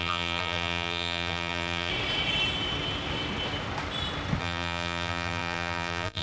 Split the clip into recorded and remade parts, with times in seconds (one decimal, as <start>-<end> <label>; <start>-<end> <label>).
0.0-1.9 remade; 1.9-4.4 recorded; 4.4-6.2 remade